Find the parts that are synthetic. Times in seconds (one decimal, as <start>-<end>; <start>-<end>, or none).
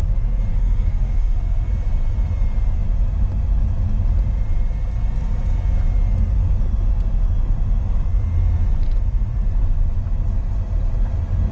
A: 0.5-1.7